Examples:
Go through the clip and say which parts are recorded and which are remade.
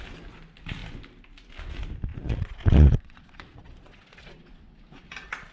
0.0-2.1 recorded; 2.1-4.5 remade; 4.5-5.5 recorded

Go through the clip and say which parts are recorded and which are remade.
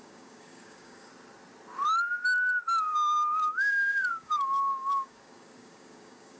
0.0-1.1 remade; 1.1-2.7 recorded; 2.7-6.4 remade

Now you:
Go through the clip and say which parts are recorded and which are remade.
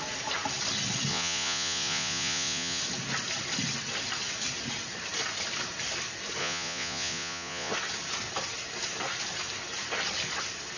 0.0-1.1 recorded; 1.1-2.8 remade; 2.8-6.4 recorded; 6.4-7.7 remade; 7.7-10.8 recorded